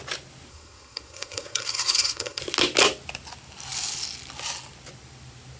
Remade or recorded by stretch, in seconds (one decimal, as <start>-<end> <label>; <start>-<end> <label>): 0.0-0.5 recorded; 0.5-2.4 remade; 2.4-5.6 recorded